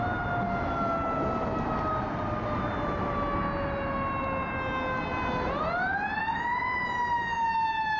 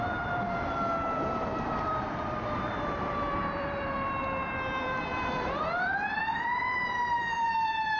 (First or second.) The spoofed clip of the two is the second